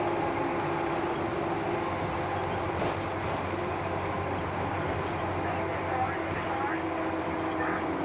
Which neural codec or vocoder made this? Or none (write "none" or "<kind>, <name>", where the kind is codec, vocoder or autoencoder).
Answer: none